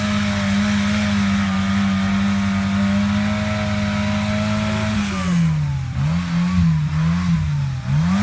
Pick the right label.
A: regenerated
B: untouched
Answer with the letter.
B